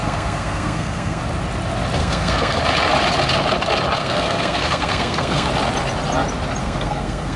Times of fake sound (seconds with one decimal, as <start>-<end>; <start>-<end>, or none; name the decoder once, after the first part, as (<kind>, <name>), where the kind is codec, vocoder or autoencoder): 0.0-1.2 (codec, SNAC); 2.0-2.6; 4.0-5.5; 6.6-7.4